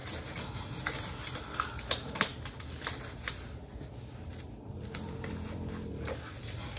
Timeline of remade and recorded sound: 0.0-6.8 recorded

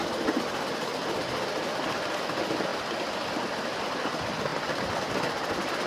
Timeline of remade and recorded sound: 0.0-5.9 recorded

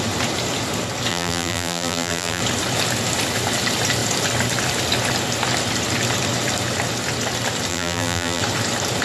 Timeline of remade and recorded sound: 0.0-1.1 recorded; 1.1-2.4 remade; 2.4-7.7 recorded; 7.7-8.4 remade; 8.4-9.0 recorded